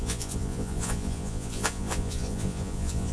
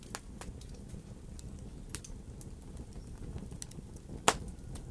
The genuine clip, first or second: second